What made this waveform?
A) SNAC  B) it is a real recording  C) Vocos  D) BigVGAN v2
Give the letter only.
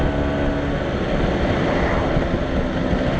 B